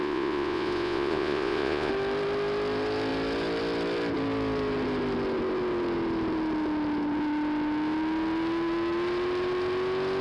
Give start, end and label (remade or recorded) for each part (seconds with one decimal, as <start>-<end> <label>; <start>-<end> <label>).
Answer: 0.0-1.9 remade; 1.9-10.2 recorded

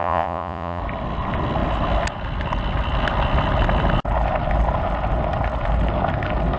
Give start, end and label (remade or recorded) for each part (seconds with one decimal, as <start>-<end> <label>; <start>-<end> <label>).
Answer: 0.0-0.8 remade; 0.8-6.6 recorded

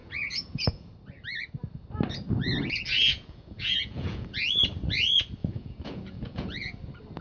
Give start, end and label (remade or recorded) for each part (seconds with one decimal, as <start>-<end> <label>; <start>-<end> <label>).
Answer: 0.0-0.9 remade; 0.9-3.0 recorded; 3.0-4.6 remade; 4.6-5.4 recorded; 5.4-6.7 remade; 6.7-7.2 recorded

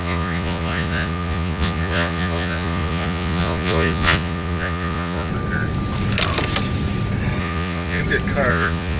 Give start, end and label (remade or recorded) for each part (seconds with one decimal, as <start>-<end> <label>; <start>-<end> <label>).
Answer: 0.0-5.3 remade; 5.3-7.4 recorded; 7.4-8.0 remade; 8.0-8.5 recorded; 8.5-9.0 remade